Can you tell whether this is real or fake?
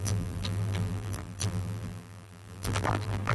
fake